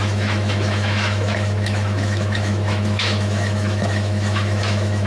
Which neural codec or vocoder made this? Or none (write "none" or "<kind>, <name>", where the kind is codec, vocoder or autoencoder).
autoencoder, DAC-VAE